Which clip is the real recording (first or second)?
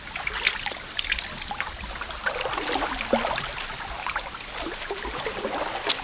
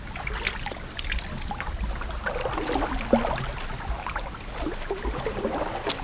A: second